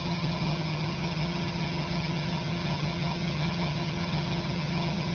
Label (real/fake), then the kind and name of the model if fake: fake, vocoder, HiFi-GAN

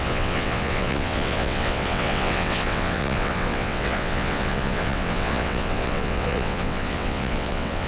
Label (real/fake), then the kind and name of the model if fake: fake, vocoder, WaveNeXt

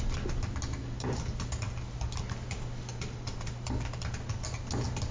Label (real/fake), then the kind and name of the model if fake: real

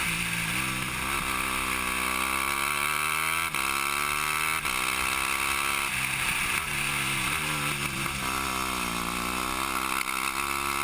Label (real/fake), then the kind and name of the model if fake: real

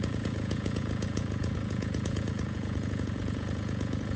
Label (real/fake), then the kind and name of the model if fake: fake, vocoder, Vocos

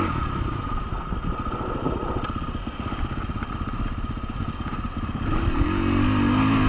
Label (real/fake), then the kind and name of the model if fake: real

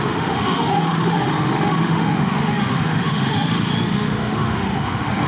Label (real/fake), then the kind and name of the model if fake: fake, autoencoder, DAC-VAE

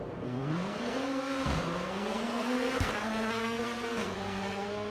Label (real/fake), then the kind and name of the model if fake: fake, codec, SNAC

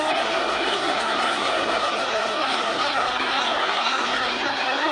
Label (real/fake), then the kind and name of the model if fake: fake, codec, SNAC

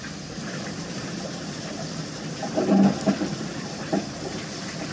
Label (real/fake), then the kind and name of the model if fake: real